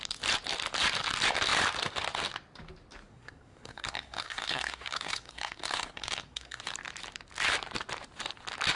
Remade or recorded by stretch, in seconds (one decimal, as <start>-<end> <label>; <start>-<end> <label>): 0.0-3.1 recorded; 3.1-6.6 remade; 6.6-8.8 recorded

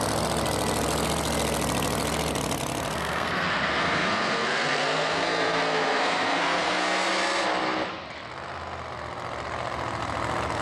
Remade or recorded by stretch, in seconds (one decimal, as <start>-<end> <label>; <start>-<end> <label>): 0.0-2.9 recorded; 2.9-7.1 remade; 7.1-10.6 recorded

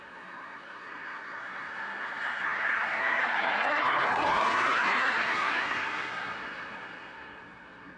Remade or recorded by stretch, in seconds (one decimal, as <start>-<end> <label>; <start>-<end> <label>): 0.0-8.0 remade

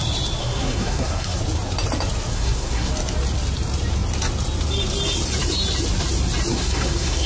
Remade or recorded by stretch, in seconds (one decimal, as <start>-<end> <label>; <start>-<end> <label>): 0.0-0.4 recorded; 0.4-1.4 remade; 1.4-2.3 recorded; 2.3-2.9 remade; 2.9-6.5 recorded; 6.5-7.3 remade

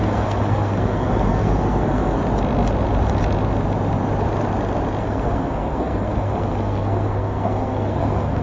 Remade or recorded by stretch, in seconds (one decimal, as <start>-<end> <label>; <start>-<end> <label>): 0.0-2.2 remade; 2.2-5.0 recorded; 5.0-8.4 remade

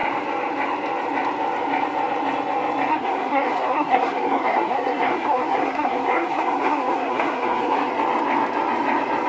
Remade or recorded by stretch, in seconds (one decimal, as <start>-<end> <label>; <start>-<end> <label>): 0.0-2.9 recorded; 2.9-7.9 remade; 7.9-9.3 recorded

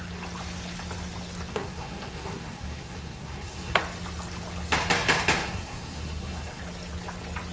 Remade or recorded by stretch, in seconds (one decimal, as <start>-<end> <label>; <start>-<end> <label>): 0.0-1.5 recorded; 1.5-3.8 remade; 3.8-5.4 recorded; 5.4-6.6 remade; 6.6-7.5 recorded